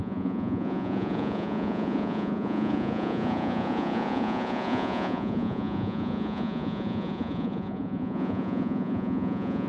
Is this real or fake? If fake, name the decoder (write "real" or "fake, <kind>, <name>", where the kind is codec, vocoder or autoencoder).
fake, vocoder, Vocos